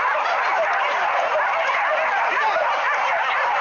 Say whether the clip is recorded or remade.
recorded